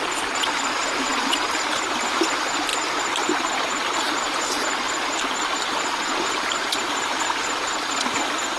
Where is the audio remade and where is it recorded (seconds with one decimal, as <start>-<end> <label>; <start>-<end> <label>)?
0.0-8.6 recorded